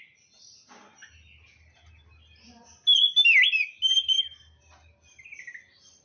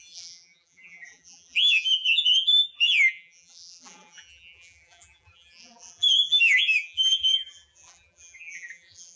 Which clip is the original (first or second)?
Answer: first